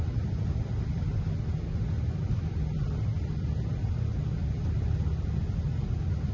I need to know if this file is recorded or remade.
recorded